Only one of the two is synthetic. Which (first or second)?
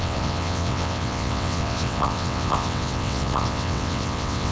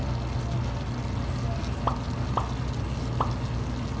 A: first